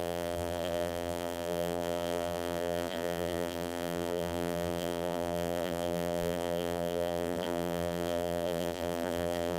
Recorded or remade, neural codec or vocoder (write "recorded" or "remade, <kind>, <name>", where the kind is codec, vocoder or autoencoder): remade, vocoder, BigVGAN v2